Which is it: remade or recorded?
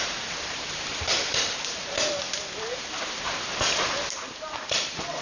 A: remade